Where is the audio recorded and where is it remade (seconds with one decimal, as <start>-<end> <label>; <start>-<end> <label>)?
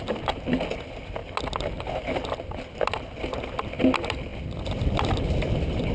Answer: 0.0-5.9 recorded